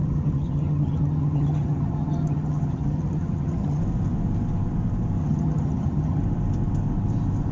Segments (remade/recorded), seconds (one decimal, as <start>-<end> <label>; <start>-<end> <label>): 0.0-3.8 remade; 3.8-5.2 recorded; 5.2-6.2 remade; 6.2-7.5 recorded